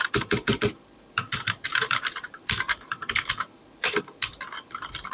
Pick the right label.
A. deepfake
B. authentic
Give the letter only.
A